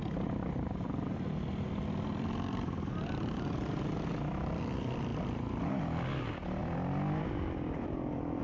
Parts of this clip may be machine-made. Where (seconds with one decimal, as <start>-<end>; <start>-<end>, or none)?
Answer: 2.1-4.6; 5.1-5.7; 6.6-8.4